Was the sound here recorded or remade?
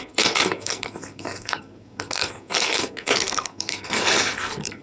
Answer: remade